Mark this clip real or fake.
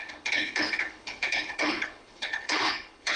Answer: fake